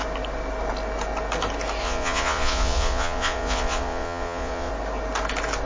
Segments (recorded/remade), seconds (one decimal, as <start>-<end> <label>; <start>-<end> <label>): 0.0-1.8 recorded; 1.8-4.7 remade; 4.7-5.7 recorded